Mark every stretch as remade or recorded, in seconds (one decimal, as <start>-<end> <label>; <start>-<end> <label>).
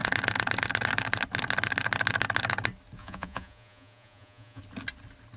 0.0-3.0 recorded; 3.0-4.6 remade; 4.6-5.4 recorded